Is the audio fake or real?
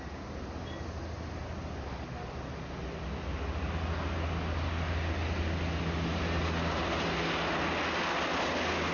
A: real